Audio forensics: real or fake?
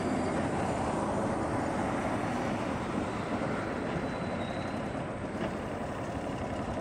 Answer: real